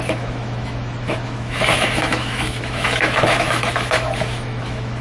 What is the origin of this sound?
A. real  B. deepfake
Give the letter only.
B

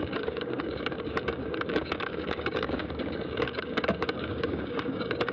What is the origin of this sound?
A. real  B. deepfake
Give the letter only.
B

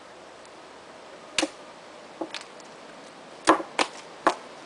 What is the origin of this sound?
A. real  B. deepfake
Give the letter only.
A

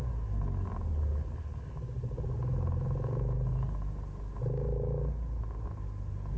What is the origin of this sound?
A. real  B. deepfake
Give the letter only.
A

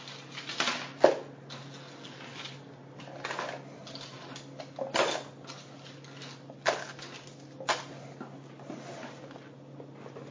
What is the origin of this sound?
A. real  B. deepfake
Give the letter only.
A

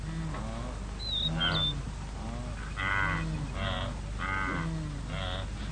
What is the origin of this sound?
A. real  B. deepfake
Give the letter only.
A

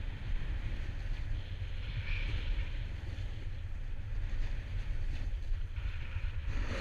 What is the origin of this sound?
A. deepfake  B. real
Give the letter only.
A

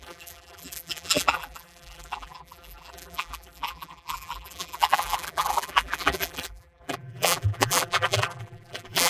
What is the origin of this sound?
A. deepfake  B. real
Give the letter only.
A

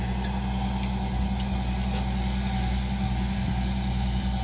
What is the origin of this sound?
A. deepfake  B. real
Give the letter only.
B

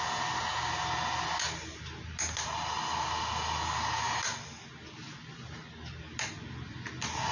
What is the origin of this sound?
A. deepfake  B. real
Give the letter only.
B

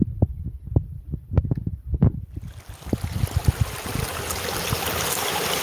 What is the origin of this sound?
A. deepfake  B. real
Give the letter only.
A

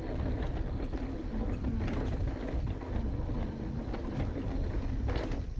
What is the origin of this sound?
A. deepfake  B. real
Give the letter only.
B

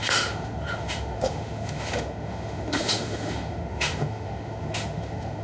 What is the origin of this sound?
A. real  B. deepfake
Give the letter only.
B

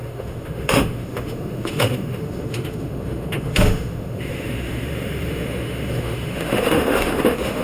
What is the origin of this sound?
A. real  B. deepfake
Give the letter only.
B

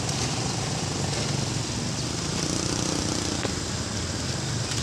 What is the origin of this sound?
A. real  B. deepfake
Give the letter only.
A